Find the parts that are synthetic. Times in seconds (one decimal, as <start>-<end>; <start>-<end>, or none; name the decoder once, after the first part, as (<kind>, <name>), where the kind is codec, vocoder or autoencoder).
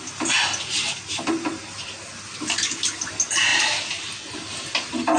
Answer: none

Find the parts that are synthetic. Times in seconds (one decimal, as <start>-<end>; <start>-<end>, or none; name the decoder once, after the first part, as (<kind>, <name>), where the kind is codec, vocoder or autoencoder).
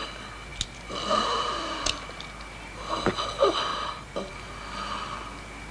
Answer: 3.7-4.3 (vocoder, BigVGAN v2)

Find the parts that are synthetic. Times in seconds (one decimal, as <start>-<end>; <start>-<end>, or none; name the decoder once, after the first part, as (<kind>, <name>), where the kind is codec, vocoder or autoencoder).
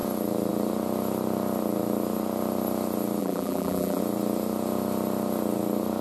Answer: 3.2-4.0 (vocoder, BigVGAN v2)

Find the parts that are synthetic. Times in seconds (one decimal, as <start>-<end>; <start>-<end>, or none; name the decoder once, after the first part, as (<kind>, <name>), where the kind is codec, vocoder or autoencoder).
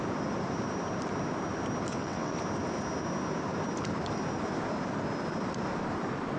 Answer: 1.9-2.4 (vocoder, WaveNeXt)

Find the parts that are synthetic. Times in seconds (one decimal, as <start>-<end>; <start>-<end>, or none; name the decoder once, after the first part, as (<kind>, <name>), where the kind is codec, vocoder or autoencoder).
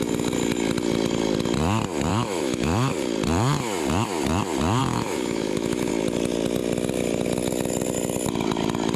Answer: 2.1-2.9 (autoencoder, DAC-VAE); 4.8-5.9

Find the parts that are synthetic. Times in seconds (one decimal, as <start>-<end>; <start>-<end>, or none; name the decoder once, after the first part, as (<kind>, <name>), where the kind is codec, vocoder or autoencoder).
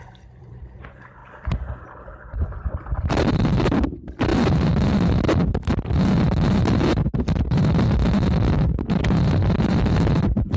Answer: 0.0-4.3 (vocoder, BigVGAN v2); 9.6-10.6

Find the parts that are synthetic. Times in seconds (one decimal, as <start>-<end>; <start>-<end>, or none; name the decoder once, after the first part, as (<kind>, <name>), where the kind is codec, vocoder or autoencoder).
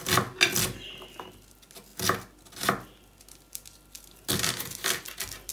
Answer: none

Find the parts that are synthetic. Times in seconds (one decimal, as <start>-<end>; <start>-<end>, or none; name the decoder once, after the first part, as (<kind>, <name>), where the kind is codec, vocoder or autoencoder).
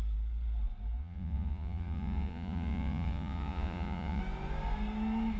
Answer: 1.0-4.2 (vocoder, Vocos)